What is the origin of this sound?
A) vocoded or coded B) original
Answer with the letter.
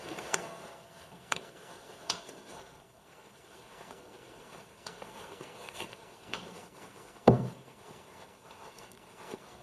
A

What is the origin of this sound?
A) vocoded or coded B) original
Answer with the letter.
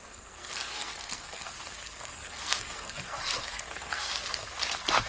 A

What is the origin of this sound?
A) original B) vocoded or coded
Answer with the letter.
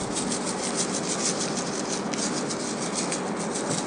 A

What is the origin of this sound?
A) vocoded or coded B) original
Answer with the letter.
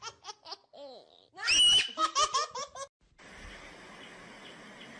B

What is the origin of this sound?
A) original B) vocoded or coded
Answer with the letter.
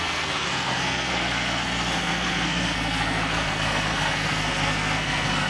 B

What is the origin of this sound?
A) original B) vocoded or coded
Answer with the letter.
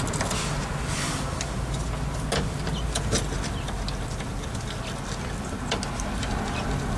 A